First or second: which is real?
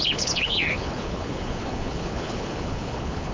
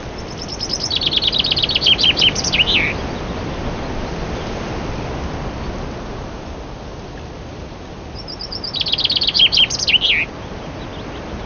second